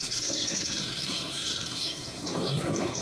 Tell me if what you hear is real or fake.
fake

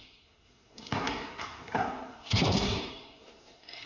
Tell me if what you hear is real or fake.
fake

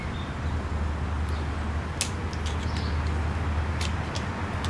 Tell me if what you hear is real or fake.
real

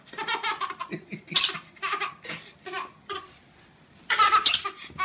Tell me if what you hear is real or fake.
real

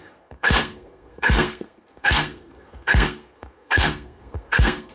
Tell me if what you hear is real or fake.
fake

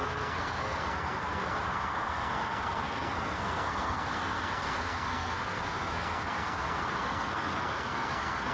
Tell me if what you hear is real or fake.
fake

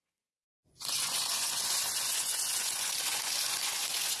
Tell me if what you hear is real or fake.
fake